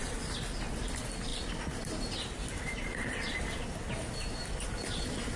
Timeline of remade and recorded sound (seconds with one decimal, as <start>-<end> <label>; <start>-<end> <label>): 0.0-5.4 recorded